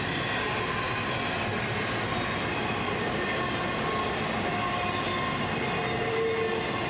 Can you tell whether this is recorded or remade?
recorded